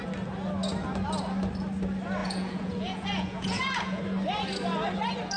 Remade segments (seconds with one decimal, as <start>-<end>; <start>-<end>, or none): 2.2-4.0

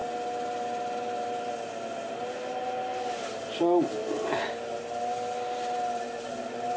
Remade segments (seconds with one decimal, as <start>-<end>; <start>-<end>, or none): none

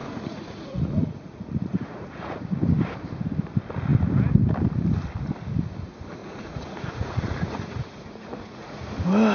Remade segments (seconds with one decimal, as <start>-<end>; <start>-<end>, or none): 0.0-2.6; 6.2-8.9